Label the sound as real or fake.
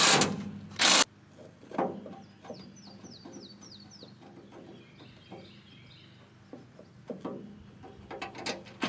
real